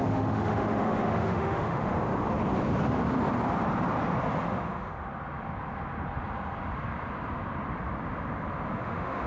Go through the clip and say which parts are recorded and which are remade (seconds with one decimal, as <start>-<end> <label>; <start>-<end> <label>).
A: 0.0-1.9 remade; 1.9-4.5 recorded; 4.5-5.1 remade; 5.1-8.8 recorded; 8.8-9.3 remade